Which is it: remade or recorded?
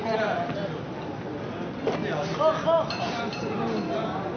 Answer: recorded